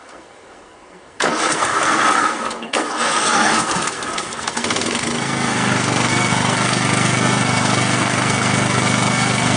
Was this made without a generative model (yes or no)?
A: no